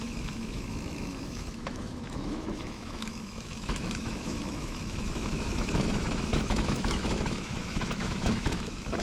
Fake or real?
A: fake